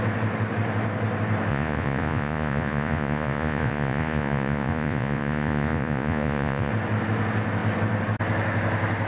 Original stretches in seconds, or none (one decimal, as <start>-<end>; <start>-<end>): 0.0-1.5; 6.7-9.1